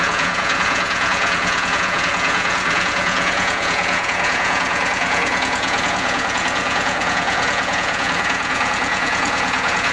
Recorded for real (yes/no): no